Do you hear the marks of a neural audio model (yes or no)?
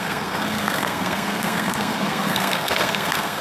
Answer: yes